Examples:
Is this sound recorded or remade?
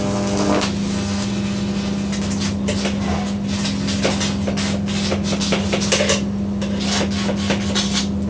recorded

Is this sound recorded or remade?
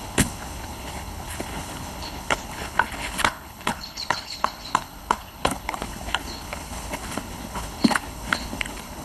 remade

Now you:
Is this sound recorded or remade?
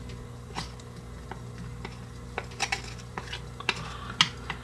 recorded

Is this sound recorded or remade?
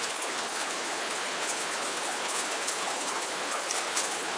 remade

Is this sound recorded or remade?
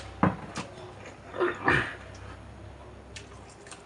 recorded